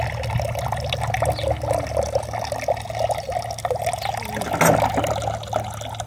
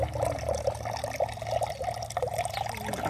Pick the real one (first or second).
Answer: first